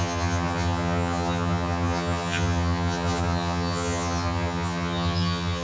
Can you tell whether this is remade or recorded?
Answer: remade